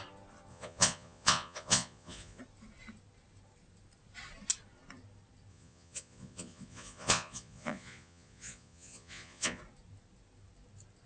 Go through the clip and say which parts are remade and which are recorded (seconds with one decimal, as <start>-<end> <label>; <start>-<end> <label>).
0.0-0.5 recorded; 0.5-2.4 remade; 2.4-5.5 recorded; 5.5-9.6 remade; 9.6-11.1 recorded